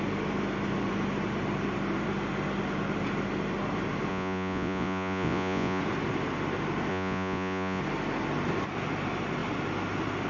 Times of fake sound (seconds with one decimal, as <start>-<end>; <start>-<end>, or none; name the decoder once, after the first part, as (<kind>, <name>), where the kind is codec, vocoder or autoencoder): 4.1-5.8 (vocoder, Vocos); 6.9-7.8